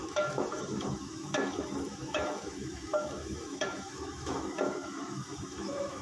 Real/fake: fake